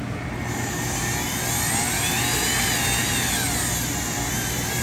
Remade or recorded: recorded